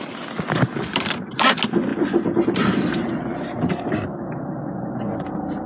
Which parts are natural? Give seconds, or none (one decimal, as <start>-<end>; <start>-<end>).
0.0-5.7